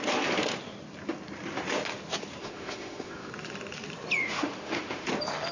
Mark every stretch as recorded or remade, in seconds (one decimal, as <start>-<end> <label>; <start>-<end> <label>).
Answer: 0.0-2.4 recorded; 2.4-3.3 remade; 3.3-4.2 recorded; 4.2-5.1 remade; 5.1-5.5 recorded